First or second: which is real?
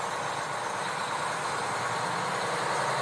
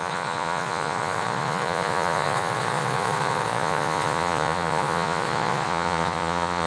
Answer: first